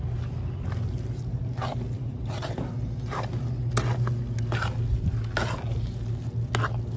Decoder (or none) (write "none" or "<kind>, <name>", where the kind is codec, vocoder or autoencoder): none